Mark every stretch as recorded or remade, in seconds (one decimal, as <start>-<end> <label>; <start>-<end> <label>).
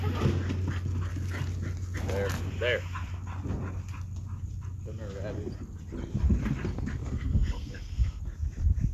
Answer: 0.0-7.0 recorded; 7.0-8.2 remade; 8.2-8.9 recorded